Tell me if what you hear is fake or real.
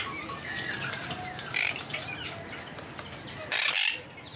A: real